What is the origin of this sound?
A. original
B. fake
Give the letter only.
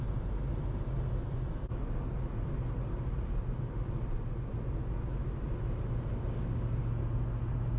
A